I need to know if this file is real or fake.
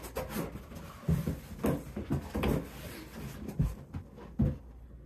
real